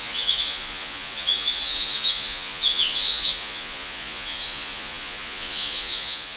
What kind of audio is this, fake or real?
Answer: fake